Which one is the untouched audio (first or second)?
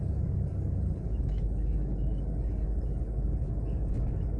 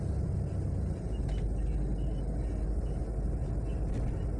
second